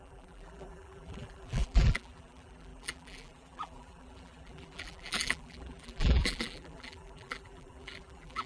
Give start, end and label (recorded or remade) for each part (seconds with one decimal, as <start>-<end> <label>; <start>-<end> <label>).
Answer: 0.0-8.5 remade